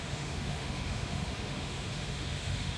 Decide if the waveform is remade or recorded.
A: remade